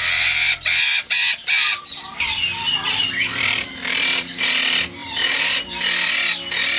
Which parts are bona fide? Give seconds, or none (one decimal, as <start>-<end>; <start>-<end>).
0.0-1.7; 4.4-5.0; 5.8-6.8